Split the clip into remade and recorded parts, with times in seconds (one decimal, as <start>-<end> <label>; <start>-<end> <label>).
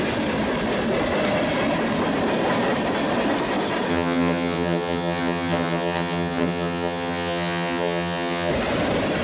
0.0-3.9 recorded; 3.9-8.5 remade; 8.5-9.2 recorded